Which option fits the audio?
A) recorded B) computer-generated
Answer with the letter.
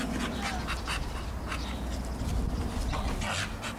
A